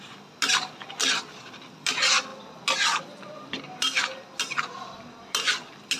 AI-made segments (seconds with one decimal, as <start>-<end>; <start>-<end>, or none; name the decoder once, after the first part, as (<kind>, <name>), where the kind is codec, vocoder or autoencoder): none